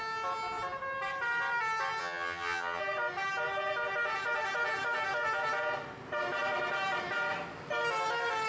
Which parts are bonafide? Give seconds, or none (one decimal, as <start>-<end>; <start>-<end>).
0.0-2.0; 2.8-8.5